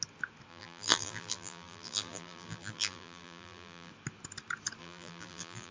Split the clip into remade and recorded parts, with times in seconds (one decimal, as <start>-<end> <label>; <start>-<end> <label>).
0.0-0.5 recorded; 0.5-3.9 remade; 3.9-4.8 recorded; 4.8-5.7 remade